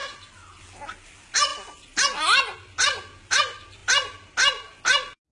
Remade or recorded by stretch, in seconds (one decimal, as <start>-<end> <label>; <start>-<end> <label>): 0.0-5.3 recorded